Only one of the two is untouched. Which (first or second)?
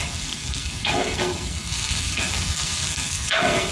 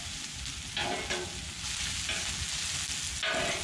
second